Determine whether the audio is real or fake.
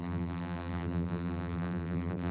fake